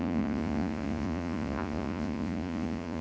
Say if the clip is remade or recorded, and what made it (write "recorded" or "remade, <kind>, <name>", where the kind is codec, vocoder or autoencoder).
remade, vocoder, Vocos